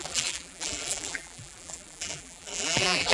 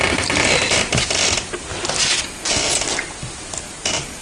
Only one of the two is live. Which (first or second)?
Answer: second